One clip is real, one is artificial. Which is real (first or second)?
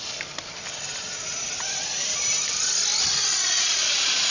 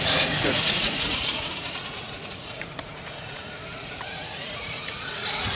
first